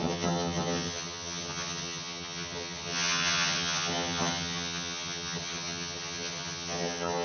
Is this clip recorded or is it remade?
remade